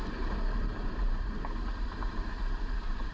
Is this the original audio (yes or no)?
no